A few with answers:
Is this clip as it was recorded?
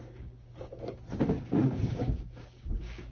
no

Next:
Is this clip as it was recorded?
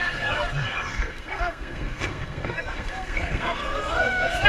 no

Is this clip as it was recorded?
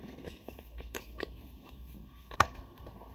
no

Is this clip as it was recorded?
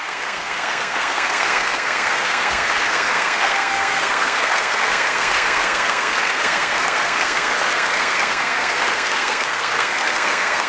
no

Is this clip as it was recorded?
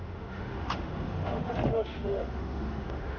no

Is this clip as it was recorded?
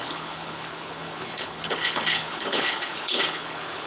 no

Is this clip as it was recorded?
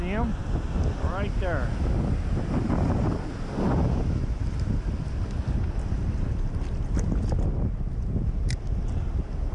yes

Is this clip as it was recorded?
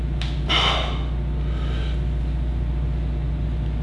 yes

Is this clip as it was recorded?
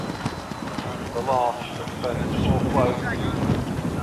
yes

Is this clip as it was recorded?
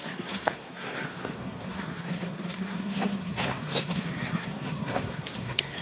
no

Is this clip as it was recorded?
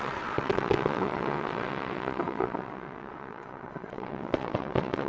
no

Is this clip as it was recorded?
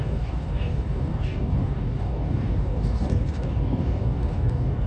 no